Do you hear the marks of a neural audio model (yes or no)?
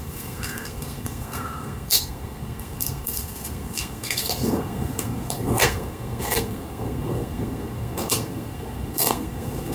yes